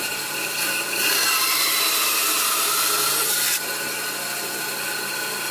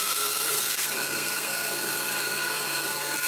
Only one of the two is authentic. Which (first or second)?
first